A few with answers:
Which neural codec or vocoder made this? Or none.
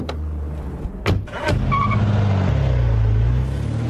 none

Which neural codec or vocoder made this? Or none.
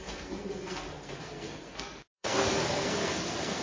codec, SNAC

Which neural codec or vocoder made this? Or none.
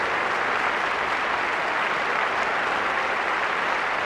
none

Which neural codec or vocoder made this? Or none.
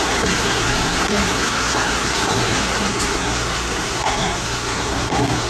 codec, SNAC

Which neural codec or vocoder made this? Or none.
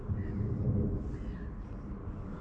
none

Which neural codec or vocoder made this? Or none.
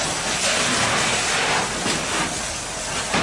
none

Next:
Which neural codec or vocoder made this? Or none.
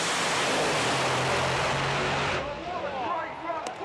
none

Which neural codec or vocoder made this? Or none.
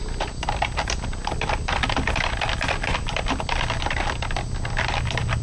none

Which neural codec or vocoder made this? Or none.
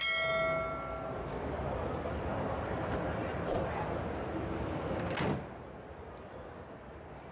none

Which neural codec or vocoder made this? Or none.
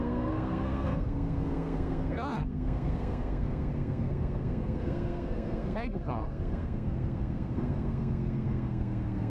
codec, SNAC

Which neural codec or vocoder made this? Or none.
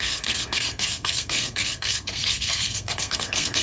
codec, SNAC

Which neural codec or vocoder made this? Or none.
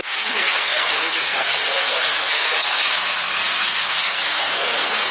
codec, SNAC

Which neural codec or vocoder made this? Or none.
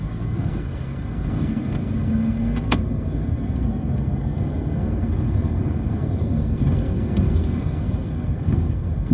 codec, SNAC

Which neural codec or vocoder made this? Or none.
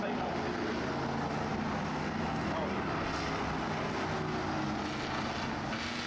none